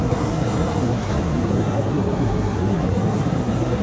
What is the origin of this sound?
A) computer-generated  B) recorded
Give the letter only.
A